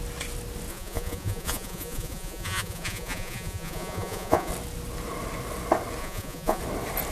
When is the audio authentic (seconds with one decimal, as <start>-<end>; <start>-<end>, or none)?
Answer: 0.0-0.7; 4.5-6.0; 6.6-7.1